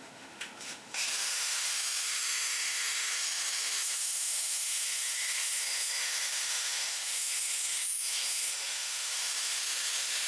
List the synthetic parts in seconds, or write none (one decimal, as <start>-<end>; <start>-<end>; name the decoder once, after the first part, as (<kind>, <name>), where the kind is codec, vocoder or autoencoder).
0.0-10.3 (autoencoder, DAC-VAE)